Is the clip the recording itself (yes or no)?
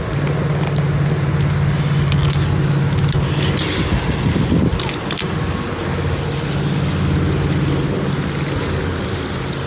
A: yes